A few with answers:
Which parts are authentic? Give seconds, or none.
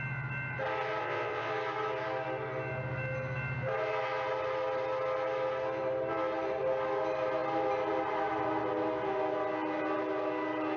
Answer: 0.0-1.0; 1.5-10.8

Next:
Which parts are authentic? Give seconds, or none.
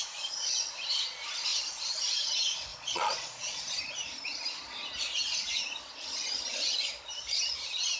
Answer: 0.0-2.7; 3.8-8.0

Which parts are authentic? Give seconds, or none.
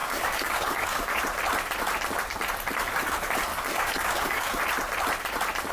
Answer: 1.2-3.5; 4.6-5.7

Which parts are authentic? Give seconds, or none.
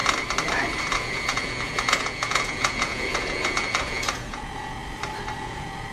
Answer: 0.0-0.8; 4.8-5.4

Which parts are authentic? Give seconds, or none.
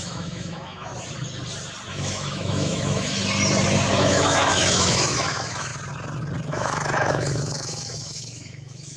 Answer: 0.9-1.9; 3.2-3.9; 5.7-6.5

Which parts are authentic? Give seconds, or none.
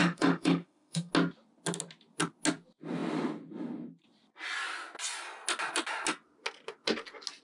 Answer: 1.1-7.4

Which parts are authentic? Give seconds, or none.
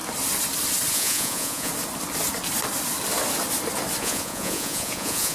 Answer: 0.0-0.9; 1.7-4.0